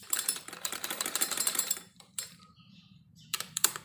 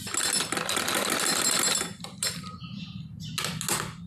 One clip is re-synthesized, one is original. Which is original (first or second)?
second